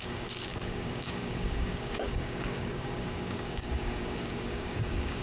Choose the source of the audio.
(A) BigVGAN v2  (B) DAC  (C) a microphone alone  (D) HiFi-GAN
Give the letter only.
B